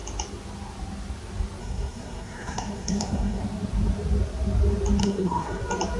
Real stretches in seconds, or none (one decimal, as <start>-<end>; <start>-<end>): 0.0-1.6; 3.4-5.0; 5.6-6.0